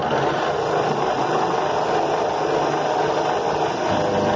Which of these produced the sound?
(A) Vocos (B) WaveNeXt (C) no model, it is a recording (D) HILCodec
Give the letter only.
C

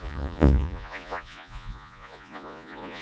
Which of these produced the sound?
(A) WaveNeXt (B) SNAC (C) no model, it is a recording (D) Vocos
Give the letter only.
D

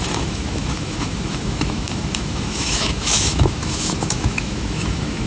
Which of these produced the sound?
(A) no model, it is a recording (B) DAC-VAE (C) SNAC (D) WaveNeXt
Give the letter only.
B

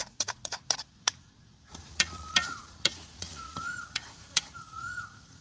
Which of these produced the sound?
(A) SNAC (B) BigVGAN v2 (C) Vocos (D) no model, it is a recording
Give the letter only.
C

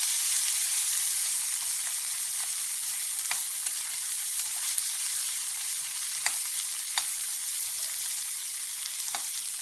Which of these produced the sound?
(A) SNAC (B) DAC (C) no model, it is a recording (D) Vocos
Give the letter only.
C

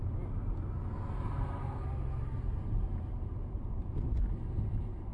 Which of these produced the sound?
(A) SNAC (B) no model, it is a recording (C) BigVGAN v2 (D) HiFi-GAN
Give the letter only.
B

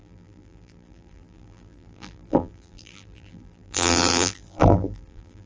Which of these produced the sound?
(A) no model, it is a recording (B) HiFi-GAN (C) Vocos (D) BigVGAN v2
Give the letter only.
D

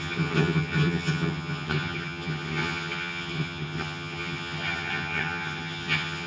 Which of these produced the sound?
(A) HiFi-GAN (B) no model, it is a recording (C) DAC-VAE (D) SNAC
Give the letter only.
A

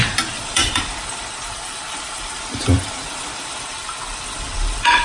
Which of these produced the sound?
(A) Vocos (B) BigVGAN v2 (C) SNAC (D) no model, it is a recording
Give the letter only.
B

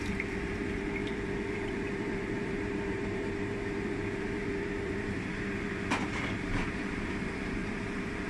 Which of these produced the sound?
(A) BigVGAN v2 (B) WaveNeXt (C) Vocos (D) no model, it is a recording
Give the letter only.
A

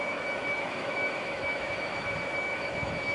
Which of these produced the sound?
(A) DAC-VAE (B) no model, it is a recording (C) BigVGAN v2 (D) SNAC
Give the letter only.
A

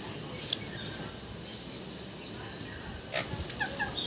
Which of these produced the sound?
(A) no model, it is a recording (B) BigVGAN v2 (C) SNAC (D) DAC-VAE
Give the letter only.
A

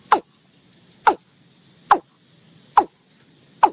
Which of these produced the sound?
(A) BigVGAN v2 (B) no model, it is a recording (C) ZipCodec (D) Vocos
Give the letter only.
B